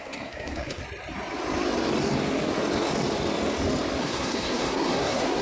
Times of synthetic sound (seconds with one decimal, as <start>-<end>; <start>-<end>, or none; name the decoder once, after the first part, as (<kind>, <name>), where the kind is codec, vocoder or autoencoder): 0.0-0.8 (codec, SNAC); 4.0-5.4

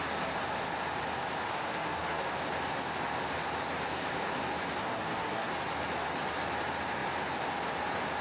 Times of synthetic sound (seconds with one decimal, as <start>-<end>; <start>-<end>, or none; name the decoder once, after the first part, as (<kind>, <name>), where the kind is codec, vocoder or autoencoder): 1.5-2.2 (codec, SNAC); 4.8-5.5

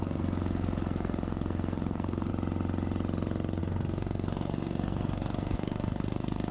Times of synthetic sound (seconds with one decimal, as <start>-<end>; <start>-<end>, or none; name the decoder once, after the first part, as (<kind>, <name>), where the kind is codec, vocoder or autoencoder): 0.0-2.3 (codec, SNAC); 3.6-6.5

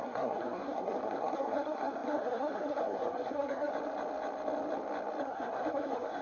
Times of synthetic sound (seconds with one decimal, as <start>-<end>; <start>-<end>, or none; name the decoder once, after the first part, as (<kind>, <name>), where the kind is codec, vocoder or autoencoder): 0.0-3.7 (codec, SNAC); 5.2-6.2

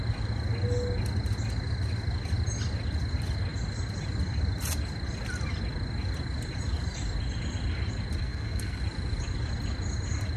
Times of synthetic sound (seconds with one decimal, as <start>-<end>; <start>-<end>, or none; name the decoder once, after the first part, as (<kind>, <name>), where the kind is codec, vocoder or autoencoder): 8.2-8.8 (codec, SNAC)

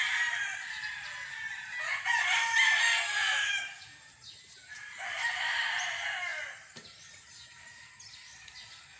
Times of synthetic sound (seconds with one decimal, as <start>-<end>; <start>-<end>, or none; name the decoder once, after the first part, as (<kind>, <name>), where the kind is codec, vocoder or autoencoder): none